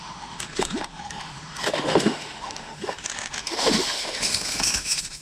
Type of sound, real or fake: fake